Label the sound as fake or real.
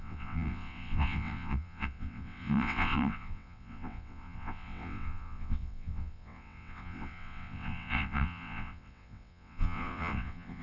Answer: fake